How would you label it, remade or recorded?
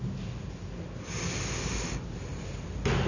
recorded